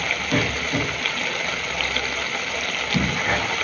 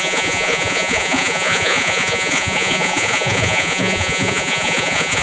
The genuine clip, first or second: first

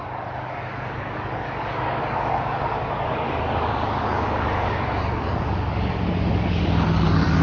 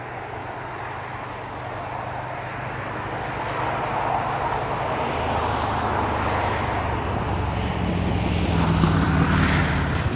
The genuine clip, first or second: second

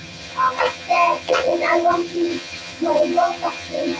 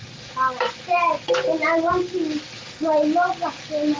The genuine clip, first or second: second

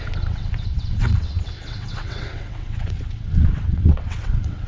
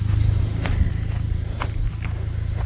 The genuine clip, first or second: second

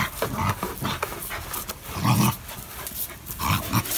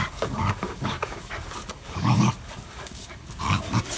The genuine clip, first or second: first